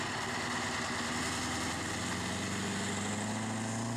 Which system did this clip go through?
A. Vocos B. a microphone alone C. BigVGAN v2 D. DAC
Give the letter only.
B